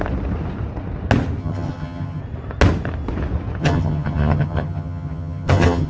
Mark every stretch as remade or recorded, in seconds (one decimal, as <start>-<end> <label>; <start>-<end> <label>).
0.0-1.4 recorded; 1.4-2.2 remade; 2.2-3.6 recorded; 3.6-5.9 remade